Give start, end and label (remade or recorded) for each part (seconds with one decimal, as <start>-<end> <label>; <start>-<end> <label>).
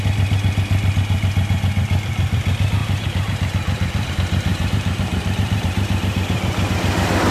0.0-2.8 recorded; 2.8-4.1 remade; 4.1-4.5 recorded; 4.5-6.7 remade; 6.7-7.3 recorded